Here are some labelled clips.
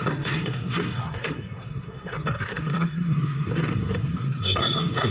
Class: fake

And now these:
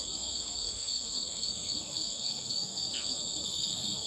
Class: fake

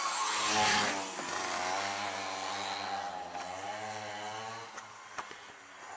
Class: real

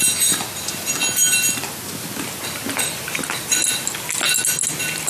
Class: real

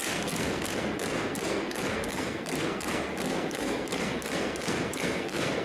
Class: fake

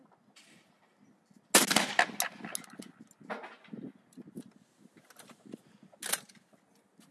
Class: real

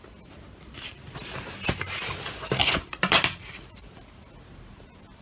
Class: real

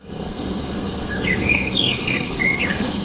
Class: fake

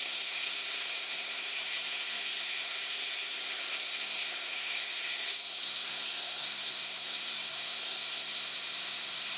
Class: fake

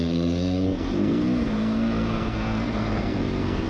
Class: fake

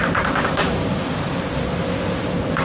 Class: real